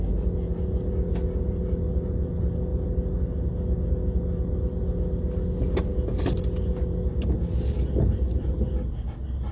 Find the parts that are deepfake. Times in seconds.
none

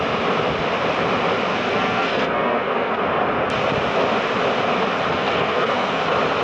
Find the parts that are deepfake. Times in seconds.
1.5-3.0 (codec, SNAC); 5.1-6.0

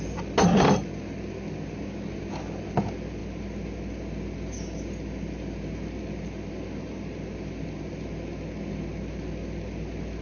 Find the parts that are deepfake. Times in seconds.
none

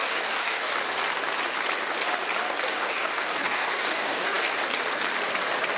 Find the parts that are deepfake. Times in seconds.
0.0-0.7 (codec, DAC); 2.7-4.5

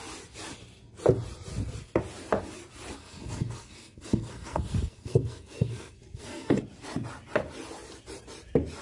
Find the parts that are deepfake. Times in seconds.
3.0-6.6 (codec, SNAC)